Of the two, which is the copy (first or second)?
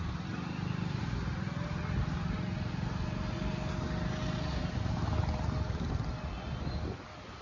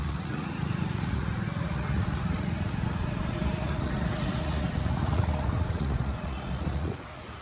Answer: second